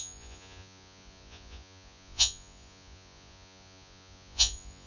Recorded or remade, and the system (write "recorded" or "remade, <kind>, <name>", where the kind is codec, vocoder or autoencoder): remade, vocoder, Vocos